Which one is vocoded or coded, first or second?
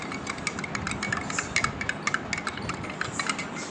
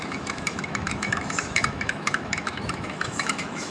second